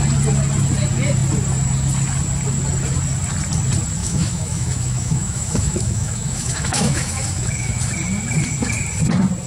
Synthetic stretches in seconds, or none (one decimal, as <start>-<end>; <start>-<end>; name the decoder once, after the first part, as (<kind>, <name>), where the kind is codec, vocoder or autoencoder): 4.0-7.8 (autoencoder, DAC-VAE)